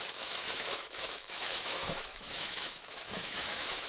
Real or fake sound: fake